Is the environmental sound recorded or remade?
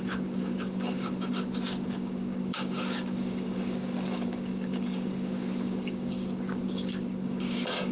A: remade